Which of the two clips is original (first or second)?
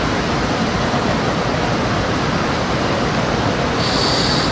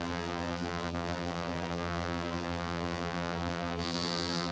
first